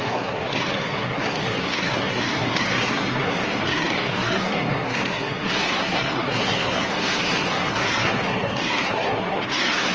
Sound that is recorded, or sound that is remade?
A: remade